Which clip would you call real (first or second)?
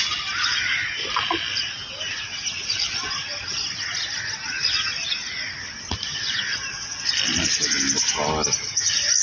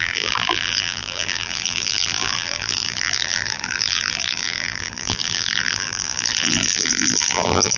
first